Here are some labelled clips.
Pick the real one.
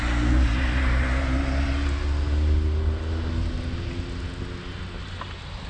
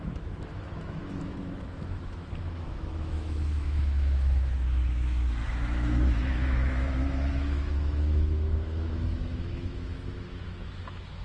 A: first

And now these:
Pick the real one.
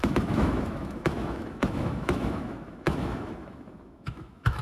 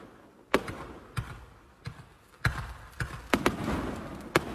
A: second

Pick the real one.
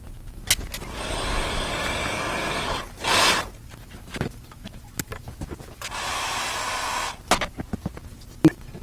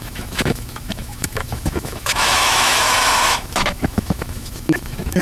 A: first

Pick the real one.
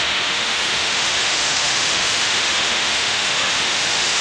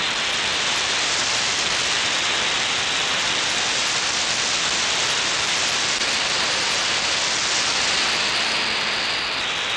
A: second